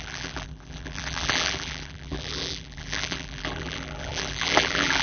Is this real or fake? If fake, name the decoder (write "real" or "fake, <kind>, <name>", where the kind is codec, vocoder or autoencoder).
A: fake, vocoder, BigVGAN v2